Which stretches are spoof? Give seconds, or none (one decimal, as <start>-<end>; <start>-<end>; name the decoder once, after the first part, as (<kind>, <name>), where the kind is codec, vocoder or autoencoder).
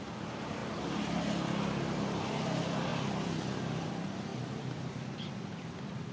0.0-0.6 (vocoder, BigVGAN v2); 1.8-6.1